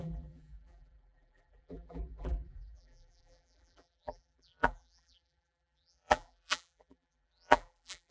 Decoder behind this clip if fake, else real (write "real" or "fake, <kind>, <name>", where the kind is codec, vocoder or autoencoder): fake, vocoder, BigVGAN v2